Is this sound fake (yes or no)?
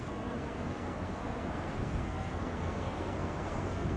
yes